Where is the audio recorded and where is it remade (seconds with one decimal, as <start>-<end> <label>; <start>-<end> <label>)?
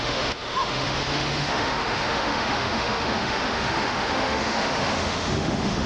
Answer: 0.0-5.9 remade